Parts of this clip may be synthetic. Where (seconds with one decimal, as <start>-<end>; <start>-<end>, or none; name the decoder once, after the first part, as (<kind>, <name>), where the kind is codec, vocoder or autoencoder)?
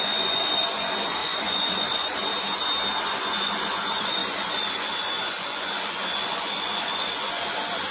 0.0-2.3 (vocoder, Vocos); 3.0-7.9